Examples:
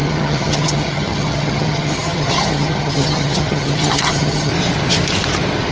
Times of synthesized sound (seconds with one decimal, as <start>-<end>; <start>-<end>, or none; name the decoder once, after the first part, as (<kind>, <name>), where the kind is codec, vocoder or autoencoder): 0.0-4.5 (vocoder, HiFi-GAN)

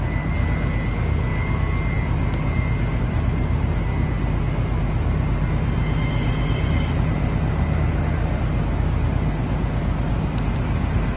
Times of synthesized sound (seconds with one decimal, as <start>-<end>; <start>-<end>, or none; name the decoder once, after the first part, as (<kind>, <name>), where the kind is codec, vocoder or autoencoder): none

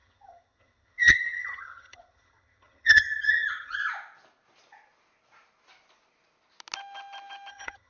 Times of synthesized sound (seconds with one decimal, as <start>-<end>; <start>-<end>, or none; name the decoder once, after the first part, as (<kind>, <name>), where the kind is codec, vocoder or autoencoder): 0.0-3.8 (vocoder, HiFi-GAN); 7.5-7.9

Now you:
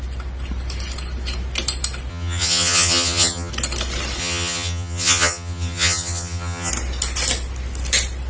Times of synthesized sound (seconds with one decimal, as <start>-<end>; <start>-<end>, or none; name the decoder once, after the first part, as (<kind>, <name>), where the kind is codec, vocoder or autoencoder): 2.1-3.5 (vocoder, HiFi-GAN); 4.2-6.7

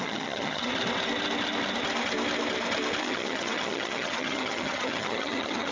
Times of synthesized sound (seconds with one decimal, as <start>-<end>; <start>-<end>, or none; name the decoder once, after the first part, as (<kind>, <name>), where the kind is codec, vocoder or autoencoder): 0.0-0.7 (vocoder, HiFi-GAN); 3.0-5.7

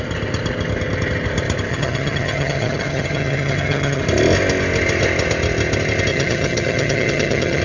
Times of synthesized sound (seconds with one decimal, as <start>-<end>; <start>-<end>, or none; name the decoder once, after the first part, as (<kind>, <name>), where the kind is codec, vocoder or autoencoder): 1.7-4.0 (vocoder, HiFi-GAN); 6.1-7.6

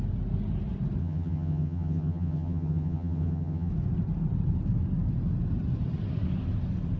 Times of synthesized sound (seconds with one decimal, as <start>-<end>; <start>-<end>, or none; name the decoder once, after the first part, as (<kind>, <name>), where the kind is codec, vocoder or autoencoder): 1.0-3.7 (vocoder, HiFi-GAN)

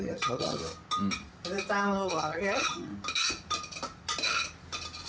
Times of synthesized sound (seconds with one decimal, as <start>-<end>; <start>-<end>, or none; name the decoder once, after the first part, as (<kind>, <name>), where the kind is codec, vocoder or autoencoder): 0.0-0.6 (vocoder, HiFi-GAN); 1.9-2.9